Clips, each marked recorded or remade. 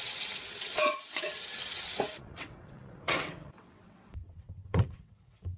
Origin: remade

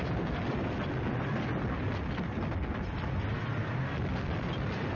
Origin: recorded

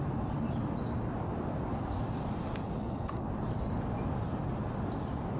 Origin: recorded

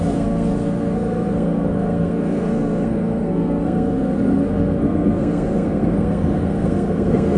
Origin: remade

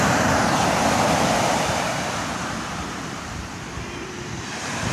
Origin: remade